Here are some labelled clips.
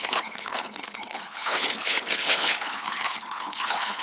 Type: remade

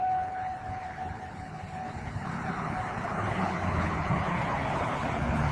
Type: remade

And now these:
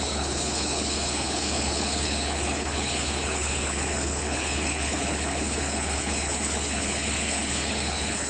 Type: remade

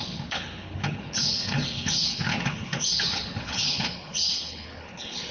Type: remade